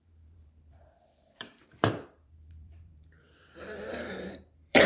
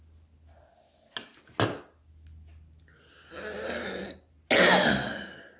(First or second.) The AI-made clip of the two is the first